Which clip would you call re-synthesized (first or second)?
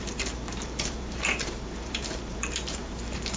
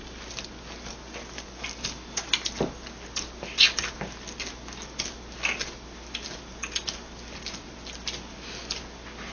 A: first